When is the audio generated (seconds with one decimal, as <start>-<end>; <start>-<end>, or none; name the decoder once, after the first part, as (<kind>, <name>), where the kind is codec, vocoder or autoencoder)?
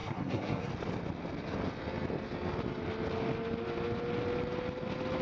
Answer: 0.0-0.7 (codec, SNAC)